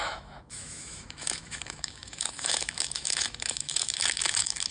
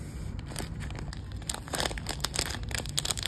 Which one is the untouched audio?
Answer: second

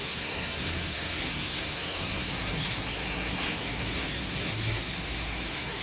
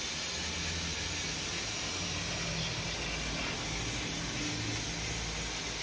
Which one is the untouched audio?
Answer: second